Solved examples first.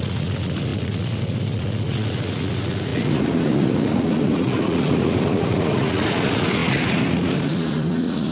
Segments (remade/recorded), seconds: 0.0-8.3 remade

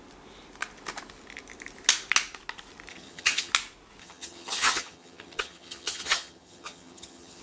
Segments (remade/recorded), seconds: 0.0-2.9 recorded; 2.9-3.5 remade; 3.5-4.0 recorded; 4.0-7.4 remade

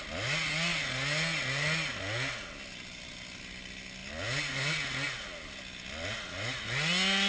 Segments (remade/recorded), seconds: 0.0-7.3 recorded